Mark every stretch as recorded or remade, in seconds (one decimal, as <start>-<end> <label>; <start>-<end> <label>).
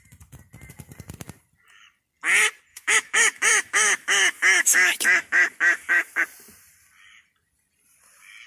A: 0.0-2.7 recorded; 2.7-6.2 remade; 6.2-8.5 recorded